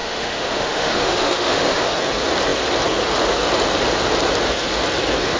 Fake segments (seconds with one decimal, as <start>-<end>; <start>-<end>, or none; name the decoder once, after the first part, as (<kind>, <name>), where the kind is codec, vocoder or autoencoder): 0.0-1.9 (autoencoder, DAC-VAE)